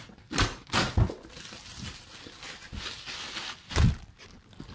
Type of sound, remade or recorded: recorded